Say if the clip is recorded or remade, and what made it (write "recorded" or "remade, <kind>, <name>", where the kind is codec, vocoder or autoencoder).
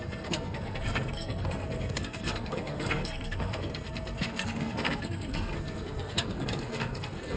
remade, codec, SNAC